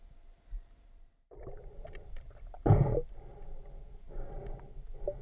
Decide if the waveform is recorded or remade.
recorded